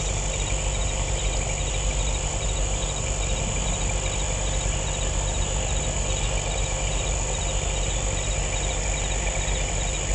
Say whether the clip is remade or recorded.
recorded